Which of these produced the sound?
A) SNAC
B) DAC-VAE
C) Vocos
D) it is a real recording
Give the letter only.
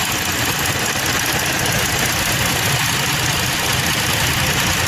D